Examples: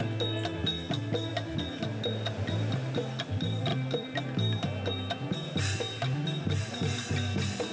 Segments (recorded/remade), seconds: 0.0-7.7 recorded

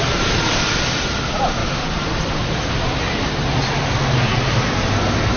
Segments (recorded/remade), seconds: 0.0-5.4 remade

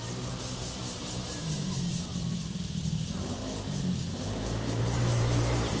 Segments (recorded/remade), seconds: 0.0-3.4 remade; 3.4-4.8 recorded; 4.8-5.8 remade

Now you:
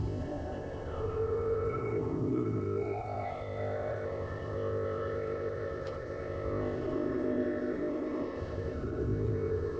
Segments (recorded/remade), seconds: 0.0-9.8 remade

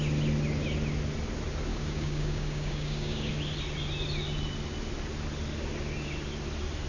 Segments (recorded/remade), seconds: 0.0-1.7 recorded; 1.7-3.3 remade; 3.3-6.9 recorded

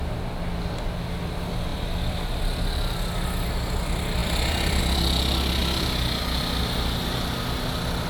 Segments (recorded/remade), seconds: 0.0-1.7 recorded; 1.7-2.4 remade; 2.4-4.2 recorded; 4.2-4.8 remade; 4.8-5.6 recorded; 5.6-6.4 remade; 6.4-8.1 recorded

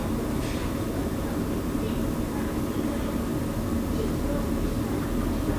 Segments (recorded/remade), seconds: 0.0-5.6 recorded